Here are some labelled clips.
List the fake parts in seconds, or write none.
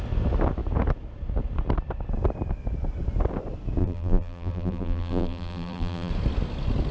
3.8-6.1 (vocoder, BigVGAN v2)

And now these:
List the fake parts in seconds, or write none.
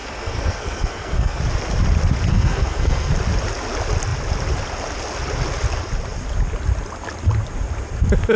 0.0-1.4 (codec, SNAC); 2.3-3.1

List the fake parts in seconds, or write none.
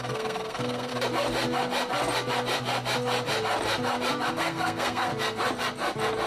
0.0-0.9 (codec, SNAC); 4.3-5.1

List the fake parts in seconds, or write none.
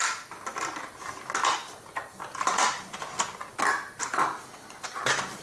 0.5-3.5 (vocoder, BigVGAN v2)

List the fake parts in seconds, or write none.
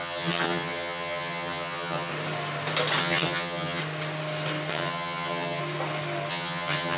0.0-2.1 (vocoder, HiFi-GAN); 3.0-3.8; 4.7-5.6; 6.3-7.0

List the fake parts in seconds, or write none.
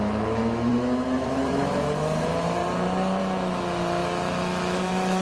0.0-2.6 (autoencoder, DAC-VAE); 3.2-5.2